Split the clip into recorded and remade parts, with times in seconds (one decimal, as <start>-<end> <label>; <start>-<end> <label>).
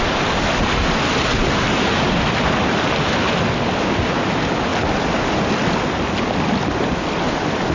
0.0-7.7 recorded